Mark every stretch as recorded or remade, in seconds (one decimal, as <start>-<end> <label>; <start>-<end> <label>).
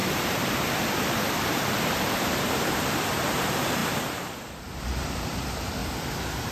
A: 0.0-5.8 remade; 5.8-6.5 recorded